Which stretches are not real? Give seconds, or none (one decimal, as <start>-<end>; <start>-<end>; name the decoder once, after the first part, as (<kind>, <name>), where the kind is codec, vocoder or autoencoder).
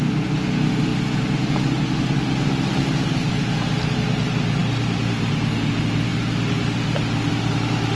none